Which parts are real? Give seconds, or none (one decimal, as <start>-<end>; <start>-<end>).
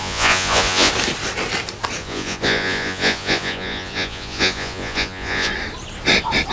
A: 0.9-2.0; 5.5-6.5